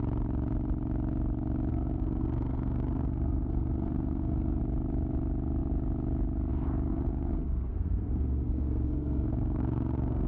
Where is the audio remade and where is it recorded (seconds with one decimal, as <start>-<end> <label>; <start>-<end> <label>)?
0.0-1.7 recorded; 1.7-4.6 remade; 4.6-6.9 recorded; 6.9-10.3 remade